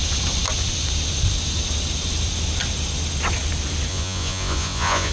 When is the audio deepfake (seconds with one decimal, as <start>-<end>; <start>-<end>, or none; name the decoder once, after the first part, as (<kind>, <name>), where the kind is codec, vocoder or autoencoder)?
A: 3.9-5.1 (vocoder, Vocos)